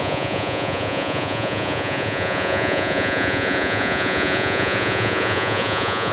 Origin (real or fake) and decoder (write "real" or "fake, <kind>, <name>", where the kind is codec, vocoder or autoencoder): fake, vocoder, Vocos